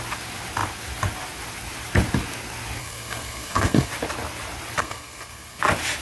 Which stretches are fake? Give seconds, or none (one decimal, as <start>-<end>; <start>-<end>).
2.8-3.9; 4.8-5.6